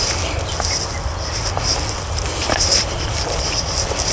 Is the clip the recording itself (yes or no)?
yes